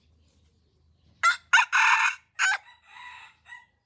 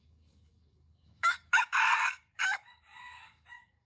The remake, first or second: second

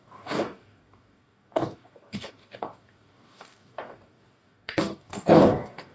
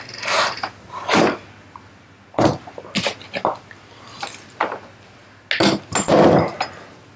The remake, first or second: first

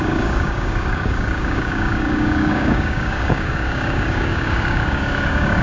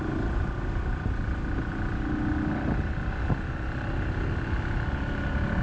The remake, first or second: first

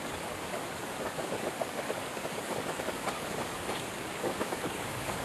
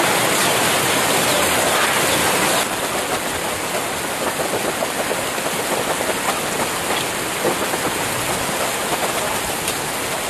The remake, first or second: first